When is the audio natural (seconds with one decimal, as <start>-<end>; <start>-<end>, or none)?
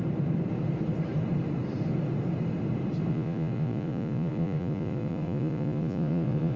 0.0-3.1